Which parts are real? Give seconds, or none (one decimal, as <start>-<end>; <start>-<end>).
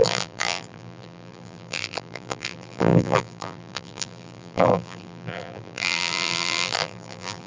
none